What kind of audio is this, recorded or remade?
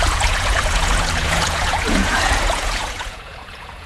remade